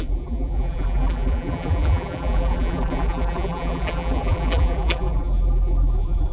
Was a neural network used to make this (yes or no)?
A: yes